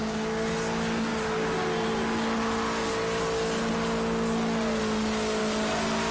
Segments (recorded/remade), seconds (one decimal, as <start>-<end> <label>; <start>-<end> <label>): 0.0-6.1 recorded